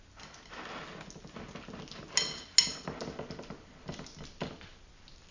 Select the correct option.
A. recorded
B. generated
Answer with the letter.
A